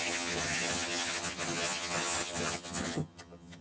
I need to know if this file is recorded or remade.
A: remade